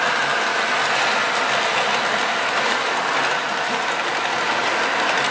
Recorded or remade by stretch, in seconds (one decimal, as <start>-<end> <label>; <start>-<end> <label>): 0.0-3.4 recorded; 3.4-4.4 remade; 4.4-5.3 recorded